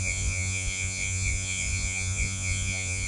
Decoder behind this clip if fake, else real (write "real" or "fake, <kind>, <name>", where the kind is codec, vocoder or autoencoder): fake, vocoder, Vocos